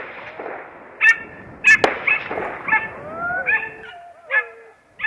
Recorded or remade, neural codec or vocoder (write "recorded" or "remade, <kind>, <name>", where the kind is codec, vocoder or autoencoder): recorded